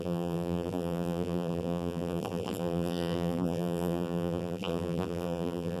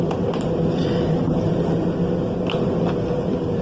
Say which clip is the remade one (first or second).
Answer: first